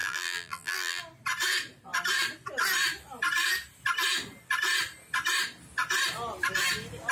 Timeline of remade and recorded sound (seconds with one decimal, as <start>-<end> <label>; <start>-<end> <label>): 0.0-1.0 remade; 1.0-7.1 recorded